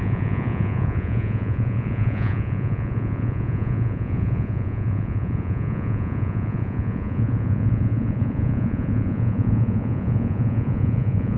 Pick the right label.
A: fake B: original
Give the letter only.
A